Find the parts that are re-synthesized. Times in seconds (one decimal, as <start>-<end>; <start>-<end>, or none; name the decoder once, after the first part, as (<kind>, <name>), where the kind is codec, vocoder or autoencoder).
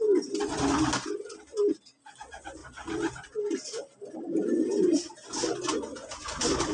none